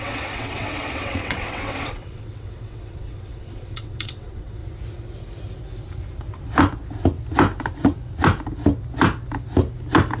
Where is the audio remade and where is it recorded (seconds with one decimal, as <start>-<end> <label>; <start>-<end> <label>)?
0.0-4.6 remade; 4.6-10.2 recorded